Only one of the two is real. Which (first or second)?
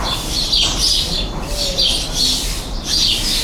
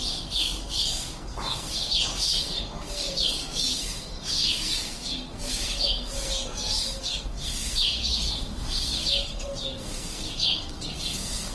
first